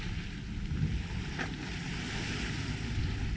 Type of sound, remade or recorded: recorded